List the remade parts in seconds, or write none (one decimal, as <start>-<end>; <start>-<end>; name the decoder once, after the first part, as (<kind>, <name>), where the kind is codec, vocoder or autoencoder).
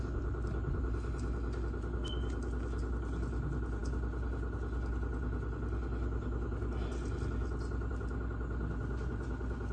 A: none